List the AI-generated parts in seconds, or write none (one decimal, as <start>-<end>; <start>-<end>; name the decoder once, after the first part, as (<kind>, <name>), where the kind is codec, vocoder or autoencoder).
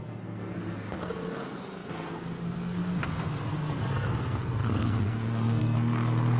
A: 0.0-6.4 (codec, SNAC)